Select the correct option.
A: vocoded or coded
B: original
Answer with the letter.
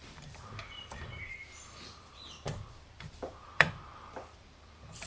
A